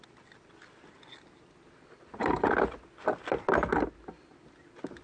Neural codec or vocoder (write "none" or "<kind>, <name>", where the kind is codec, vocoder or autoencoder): none